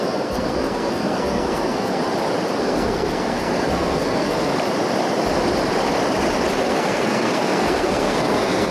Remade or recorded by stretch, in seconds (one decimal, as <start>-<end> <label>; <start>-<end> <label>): 0.0-2.0 remade; 2.0-2.6 recorded; 2.6-4.5 remade; 4.5-6.6 recorded; 6.6-8.7 remade